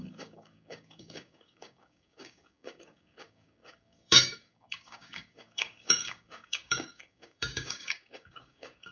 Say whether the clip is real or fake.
fake